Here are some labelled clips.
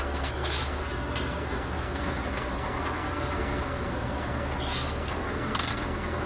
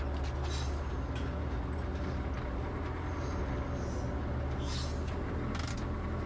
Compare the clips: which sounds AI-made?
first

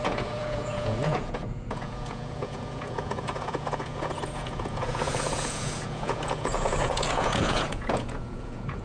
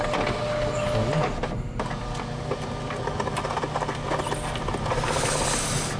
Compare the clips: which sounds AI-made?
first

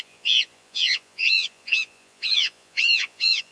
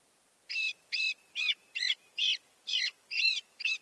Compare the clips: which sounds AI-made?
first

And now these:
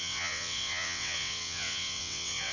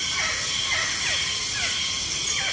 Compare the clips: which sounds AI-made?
first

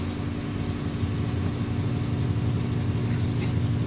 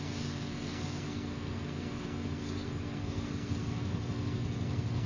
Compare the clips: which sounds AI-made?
second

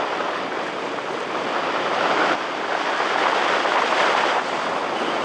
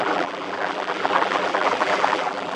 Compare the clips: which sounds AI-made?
second